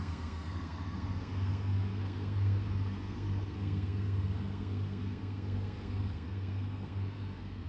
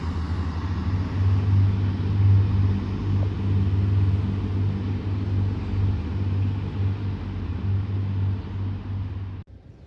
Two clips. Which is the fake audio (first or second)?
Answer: first